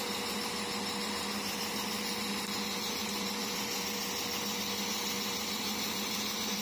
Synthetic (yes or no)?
no